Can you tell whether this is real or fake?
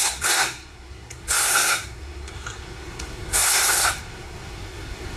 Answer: fake